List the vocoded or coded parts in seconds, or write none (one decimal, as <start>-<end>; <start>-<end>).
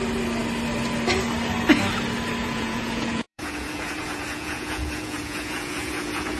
2.4-6.4